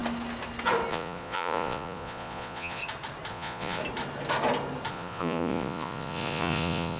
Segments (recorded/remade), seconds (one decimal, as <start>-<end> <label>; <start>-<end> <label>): 0.0-0.9 recorded; 0.9-2.8 remade; 2.8-3.3 recorded; 3.3-3.8 remade; 3.8-4.9 recorded; 4.9-7.0 remade